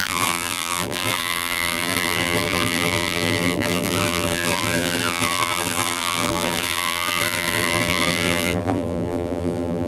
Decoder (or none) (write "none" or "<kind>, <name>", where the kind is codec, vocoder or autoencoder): vocoder, BigVGAN v2